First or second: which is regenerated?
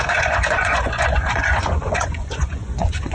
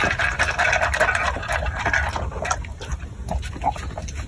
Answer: first